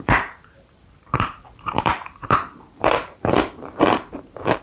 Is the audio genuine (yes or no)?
no